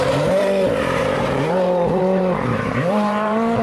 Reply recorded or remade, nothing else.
remade